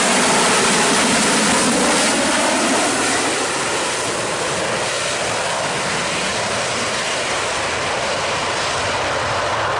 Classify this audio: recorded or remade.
recorded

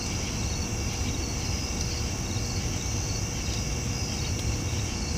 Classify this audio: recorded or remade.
recorded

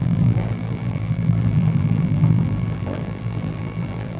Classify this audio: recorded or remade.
remade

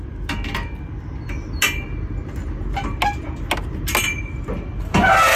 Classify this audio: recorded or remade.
recorded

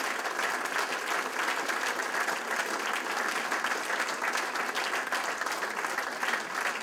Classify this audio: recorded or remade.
recorded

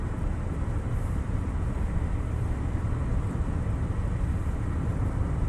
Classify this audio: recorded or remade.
remade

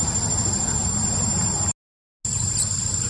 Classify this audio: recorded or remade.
recorded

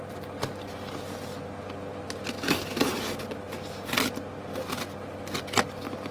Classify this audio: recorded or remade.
recorded